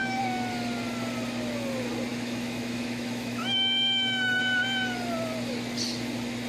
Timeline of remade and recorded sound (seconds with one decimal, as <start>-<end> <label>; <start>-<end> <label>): 0.0-0.5 remade; 0.5-2.1 recorded; 2.1-4.4 remade; 4.4-6.5 recorded